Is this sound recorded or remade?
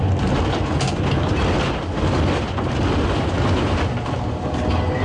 recorded